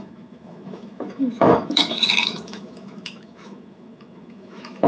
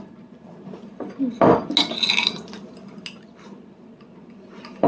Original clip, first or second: second